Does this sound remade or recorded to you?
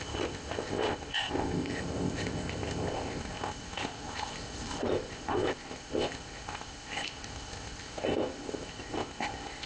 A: remade